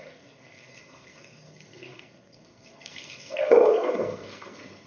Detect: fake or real fake